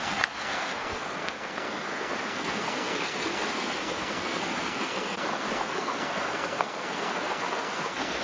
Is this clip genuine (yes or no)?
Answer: no